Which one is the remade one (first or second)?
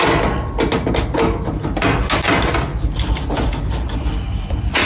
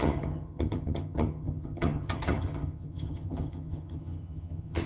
second